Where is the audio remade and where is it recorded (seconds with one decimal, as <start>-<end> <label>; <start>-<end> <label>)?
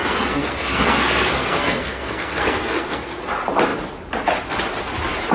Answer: 0.0-3.2 remade; 3.2-5.3 recorded